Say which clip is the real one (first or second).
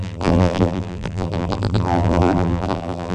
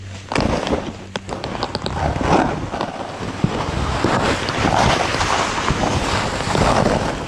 second